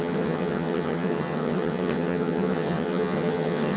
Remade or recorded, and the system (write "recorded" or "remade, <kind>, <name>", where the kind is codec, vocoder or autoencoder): remade, vocoder, HiFi-GAN